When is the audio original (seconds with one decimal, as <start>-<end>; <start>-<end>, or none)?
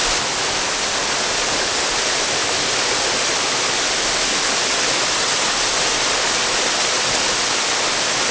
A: 0.0-8.3